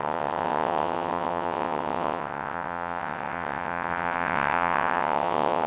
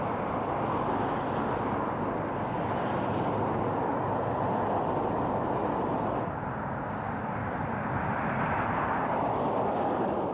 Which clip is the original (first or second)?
second